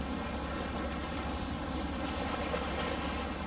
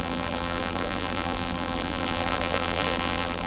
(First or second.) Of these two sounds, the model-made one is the second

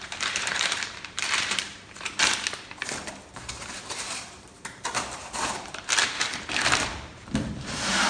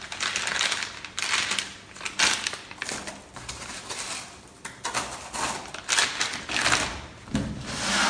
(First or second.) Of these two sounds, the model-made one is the first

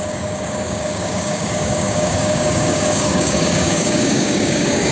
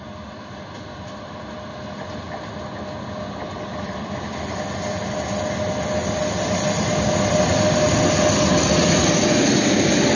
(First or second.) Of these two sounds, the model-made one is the first